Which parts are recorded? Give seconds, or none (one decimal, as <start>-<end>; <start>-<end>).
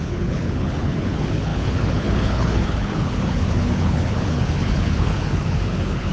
none